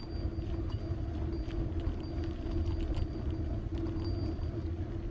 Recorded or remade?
recorded